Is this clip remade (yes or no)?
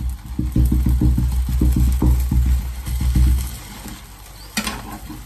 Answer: no